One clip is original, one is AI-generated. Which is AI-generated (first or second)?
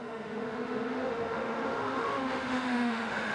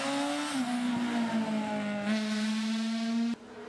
first